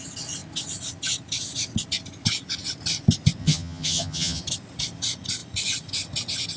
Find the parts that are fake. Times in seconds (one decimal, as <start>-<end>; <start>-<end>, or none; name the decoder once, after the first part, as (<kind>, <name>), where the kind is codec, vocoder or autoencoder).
3.4-4.4 (vocoder, HiFi-GAN)

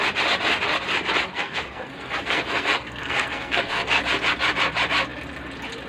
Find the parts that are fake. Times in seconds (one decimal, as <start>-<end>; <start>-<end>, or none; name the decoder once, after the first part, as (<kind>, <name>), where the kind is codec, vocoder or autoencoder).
1.3-4.0 (codec, SNAC)

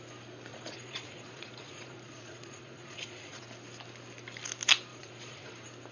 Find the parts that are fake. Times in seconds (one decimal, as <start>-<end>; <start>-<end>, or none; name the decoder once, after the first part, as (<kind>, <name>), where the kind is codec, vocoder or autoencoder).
0.5-3.4 (vocoder, Vocos); 4.9-5.5

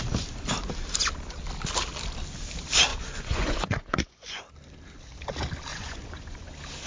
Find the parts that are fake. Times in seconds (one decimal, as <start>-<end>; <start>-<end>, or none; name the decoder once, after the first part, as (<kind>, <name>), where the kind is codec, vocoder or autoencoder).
2.9-4.4 (vocoder, Vocos); 5.7-6.5

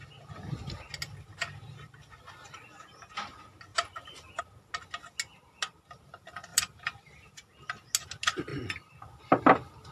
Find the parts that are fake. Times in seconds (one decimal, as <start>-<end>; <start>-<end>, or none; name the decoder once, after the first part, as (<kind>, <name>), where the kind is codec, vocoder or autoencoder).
3.7-4.4 (vocoder, BigVGAN v2); 6.5-7.3

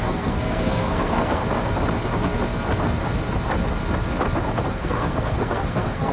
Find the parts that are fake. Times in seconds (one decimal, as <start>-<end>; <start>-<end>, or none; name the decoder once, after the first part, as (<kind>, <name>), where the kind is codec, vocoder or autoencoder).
0.0-1.4 (codec, SNAC); 4.7-6.1

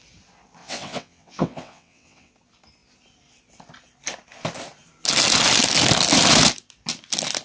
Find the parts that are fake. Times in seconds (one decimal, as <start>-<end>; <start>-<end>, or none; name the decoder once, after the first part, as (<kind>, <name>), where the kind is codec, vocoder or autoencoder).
0.6-2.3 (vocoder, WaveNeXt)